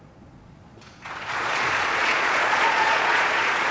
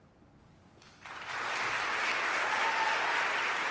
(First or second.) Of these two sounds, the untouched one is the second